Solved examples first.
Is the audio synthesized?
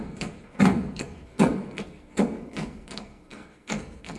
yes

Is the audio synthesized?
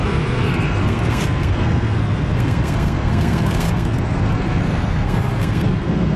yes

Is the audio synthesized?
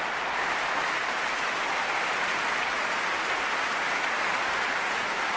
no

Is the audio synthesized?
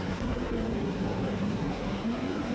yes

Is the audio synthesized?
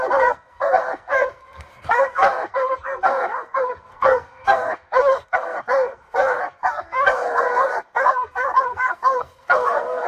yes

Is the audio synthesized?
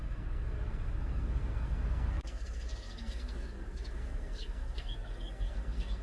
yes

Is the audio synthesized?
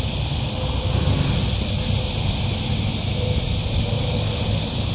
no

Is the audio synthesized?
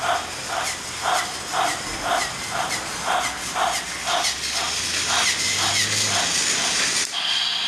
no